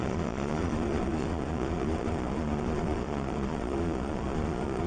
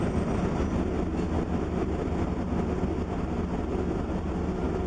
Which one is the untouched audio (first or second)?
second